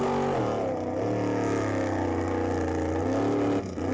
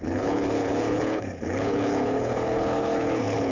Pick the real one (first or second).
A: first